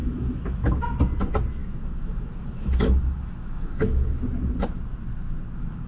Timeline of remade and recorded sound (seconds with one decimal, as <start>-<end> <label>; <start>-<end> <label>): 0.0-0.8 remade; 0.8-1.6 recorded; 1.6-4.3 remade; 4.3-5.9 recorded